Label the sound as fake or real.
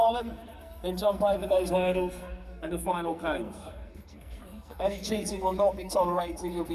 fake